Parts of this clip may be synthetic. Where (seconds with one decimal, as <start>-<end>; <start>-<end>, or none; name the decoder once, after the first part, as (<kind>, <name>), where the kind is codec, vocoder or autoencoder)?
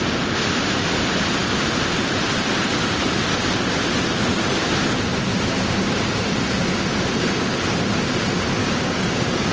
8.6-9.5 (codec, DAC)